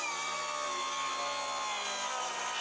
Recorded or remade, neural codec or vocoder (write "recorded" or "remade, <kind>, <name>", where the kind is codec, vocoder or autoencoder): recorded